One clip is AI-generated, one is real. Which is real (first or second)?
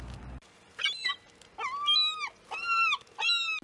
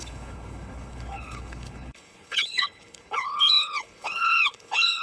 first